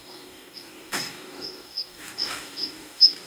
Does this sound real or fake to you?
fake